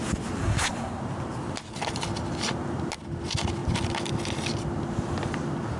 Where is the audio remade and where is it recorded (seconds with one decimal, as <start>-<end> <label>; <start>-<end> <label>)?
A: 0.0-0.4 recorded; 0.4-1.0 remade; 1.0-5.8 recorded